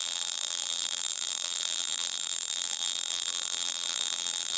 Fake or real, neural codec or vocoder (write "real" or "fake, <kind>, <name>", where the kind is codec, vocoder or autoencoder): fake, vocoder, BigVGAN v2